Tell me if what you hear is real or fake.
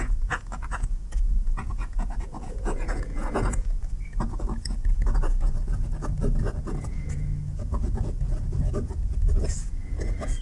fake